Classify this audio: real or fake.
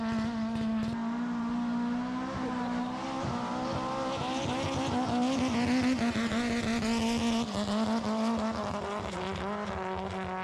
real